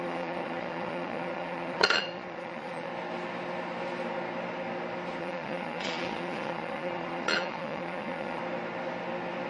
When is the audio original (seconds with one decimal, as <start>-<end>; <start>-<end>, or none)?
2.9-5.2; 8.4-9.5